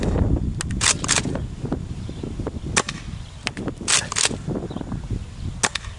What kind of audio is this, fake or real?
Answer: real